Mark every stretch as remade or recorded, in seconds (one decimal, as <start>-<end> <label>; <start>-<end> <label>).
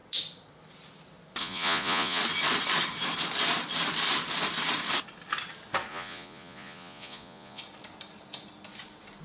0.0-1.4 recorded; 1.4-2.2 remade; 2.2-5.9 recorded; 5.9-7.6 remade; 7.6-9.2 recorded